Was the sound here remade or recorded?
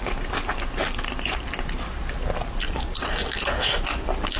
recorded